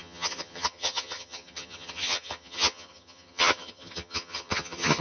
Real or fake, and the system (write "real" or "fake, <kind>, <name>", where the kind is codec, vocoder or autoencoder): fake, vocoder, HiFi-GAN